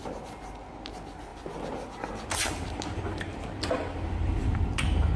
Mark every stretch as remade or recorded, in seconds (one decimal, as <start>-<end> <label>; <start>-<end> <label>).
0.0-5.2 recorded

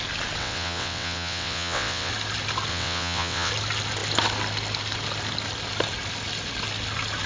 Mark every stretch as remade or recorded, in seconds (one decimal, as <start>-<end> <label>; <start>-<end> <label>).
0.0-0.4 recorded; 0.4-2.1 remade; 2.1-2.7 recorded; 2.7-3.5 remade; 3.5-7.3 recorded

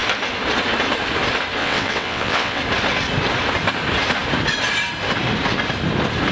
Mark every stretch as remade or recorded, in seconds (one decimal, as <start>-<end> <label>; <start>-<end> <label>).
0.0-1.6 recorded; 1.6-2.6 remade; 2.6-6.3 recorded

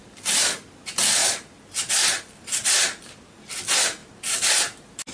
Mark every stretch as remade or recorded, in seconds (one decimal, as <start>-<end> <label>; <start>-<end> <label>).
0.0-5.1 recorded

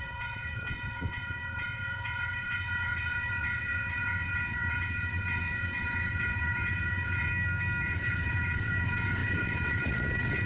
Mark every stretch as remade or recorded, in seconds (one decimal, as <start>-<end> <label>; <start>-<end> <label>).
0.0-7.3 remade; 7.3-7.8 recorded; 7.8-10.5 remade

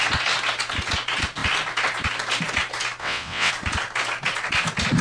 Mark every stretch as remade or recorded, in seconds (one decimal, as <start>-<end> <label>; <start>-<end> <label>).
0.0-3.0 recorded; 3.0-3.5 remade; 3.5-5.0 recorded

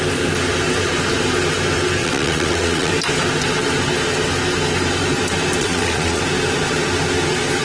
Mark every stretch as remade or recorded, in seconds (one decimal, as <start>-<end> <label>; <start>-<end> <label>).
0.0-2.0 recorded; 2.0-2.9 remade; 2.9-5.6 recorded; 5.6-6.2 remade; 6.2-7.6 recorded